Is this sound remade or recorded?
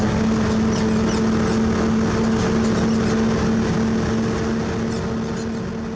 recorded